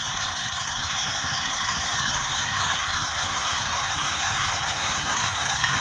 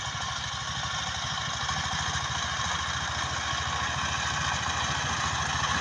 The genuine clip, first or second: second